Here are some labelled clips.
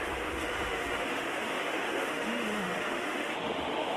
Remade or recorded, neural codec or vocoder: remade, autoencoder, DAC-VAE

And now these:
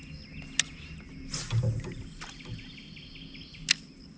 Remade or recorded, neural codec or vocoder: recorded